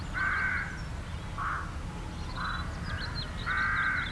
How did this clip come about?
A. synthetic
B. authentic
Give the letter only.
B